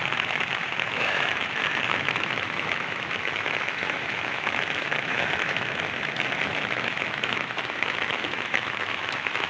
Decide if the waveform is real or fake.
fake